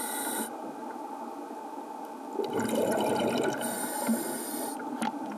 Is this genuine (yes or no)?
yes